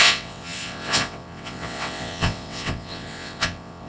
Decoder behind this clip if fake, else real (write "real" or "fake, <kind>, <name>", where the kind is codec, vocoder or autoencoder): fake, vocoder, WaveNeXt